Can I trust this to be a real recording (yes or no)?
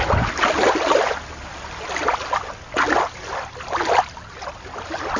yes